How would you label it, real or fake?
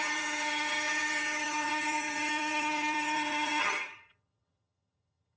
fake